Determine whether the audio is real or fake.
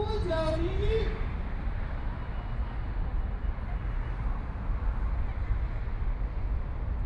real